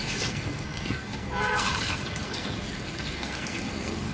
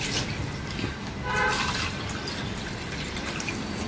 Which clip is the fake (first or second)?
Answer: first